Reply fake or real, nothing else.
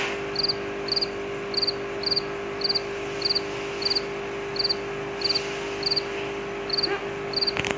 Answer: real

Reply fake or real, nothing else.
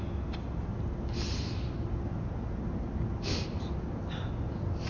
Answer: real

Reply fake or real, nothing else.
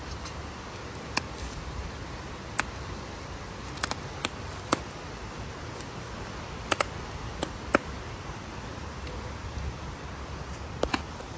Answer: real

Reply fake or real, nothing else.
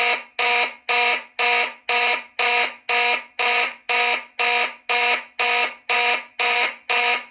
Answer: real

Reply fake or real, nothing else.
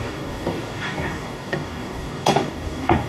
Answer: fake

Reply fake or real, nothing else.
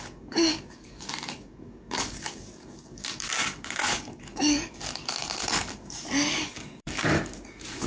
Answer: fake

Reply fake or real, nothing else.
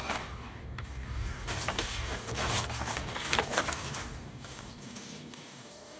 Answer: fake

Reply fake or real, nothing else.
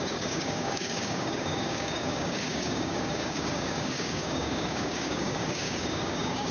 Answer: fake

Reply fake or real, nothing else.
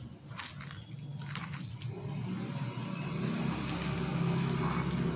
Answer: real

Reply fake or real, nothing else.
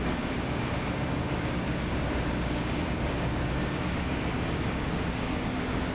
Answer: fake